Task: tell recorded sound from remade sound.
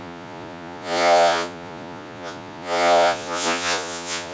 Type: remade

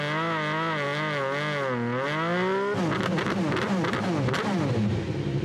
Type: recorded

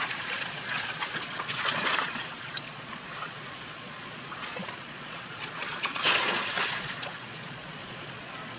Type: remade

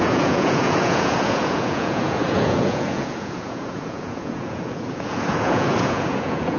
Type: remade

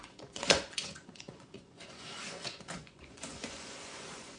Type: remade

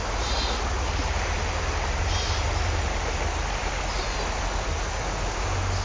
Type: recorded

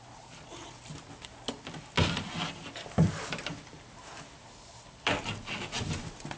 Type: recorded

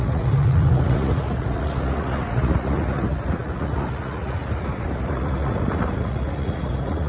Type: remade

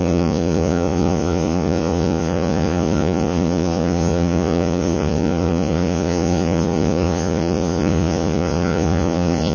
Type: remade